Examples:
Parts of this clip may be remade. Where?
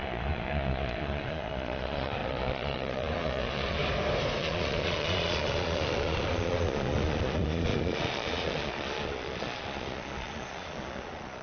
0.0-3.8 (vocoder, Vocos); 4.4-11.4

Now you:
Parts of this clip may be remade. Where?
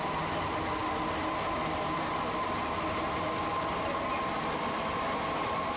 none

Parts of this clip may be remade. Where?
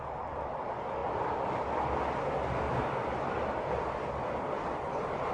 none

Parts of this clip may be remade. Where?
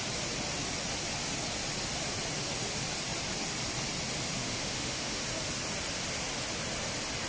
4.4-5.2 (autoencoder, DAC-VAE)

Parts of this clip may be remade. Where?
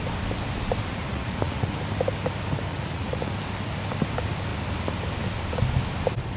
0.9-1.7 (vocoder, Vocos); 2.7-3.3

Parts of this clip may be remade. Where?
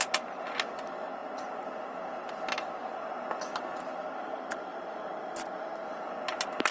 4.7-5.3 (vocoder, BigVGAN v2)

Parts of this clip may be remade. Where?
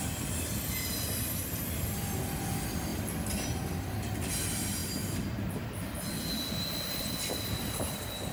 4.8-5.3 (vocoder, BigVGAN v2)